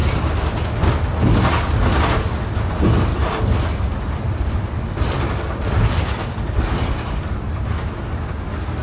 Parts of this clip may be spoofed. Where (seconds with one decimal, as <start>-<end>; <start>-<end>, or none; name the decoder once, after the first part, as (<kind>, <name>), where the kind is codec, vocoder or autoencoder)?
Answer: 0.0-0.6 (vocoder, BigVGAN v2); 3.1-7.9